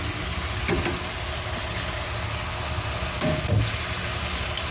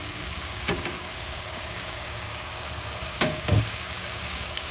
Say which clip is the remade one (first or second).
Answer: second